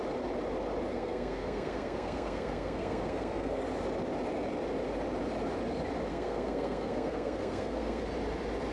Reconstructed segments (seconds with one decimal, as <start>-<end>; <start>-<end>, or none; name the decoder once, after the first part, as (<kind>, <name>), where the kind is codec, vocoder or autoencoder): 0.9-3.6 (codec, SNAC); 6.1-8.0